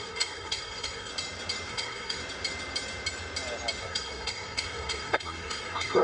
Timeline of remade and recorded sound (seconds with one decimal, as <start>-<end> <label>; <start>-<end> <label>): 0.0-1.1 remade; 1.1-1.7 recorded; 1.7-2.2 remade; 2.2-3.8 recorded; 3.8-6.0 remade